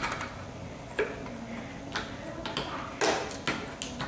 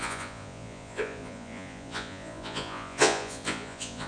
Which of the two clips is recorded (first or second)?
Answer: first